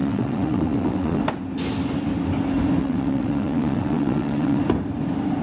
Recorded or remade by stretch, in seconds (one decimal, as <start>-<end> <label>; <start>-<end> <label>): 0.0-1.2 remade; 1.2-2.8 recorded; 2.8-4.6 remade; 4.6-5.4 recorded